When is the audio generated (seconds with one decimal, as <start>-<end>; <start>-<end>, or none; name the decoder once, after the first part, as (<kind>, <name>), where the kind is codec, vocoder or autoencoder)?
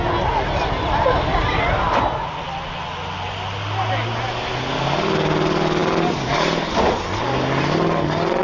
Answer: none